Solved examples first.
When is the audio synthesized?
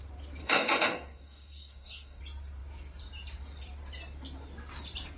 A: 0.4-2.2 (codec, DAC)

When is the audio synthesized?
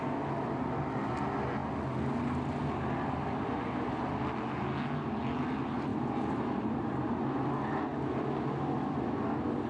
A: 5.9-7.3 (vocoder, BigVGAN v2)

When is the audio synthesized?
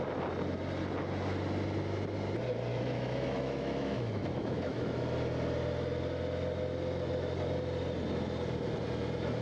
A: 2.7-5.0 (autoencoder, DAC-VAE)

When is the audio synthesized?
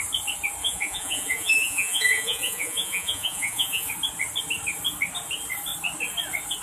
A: 0.6-3.9 (vocoder, Vocos)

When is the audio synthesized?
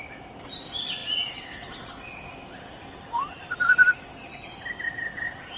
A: none